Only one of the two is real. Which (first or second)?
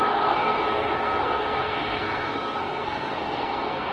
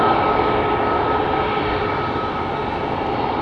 second